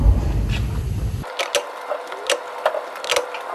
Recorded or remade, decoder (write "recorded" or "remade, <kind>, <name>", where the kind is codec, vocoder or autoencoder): recorded